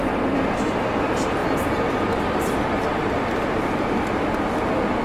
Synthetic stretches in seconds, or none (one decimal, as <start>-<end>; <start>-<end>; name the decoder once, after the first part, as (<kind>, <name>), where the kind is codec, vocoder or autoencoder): 0.0-0.7 (vocoder, BigVGAN v2)